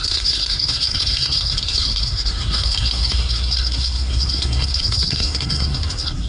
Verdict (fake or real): fake